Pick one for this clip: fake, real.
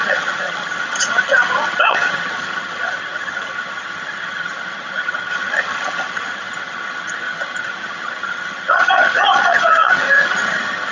fake